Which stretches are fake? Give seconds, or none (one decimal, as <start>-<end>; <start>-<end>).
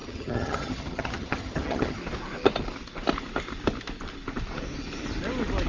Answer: 0.0-2.0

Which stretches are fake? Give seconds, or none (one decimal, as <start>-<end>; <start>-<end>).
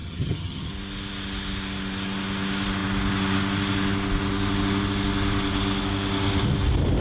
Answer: 0.0-0.7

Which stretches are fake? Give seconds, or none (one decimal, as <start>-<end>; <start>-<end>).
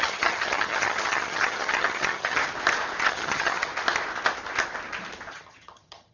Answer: 0.0-2.4; 3.0-3.7; 5.3-6.1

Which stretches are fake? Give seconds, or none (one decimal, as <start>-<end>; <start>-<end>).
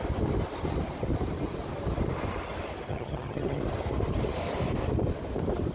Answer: 2.9-3.6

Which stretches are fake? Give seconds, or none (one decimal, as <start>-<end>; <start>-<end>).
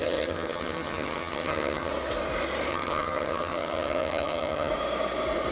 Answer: 0.0-1.9; 2.7-4.7